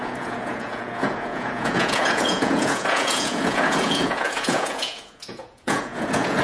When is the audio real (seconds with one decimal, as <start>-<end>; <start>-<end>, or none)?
none